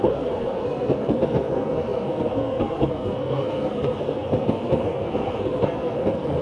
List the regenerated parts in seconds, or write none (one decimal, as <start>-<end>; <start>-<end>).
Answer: 0.0-6.4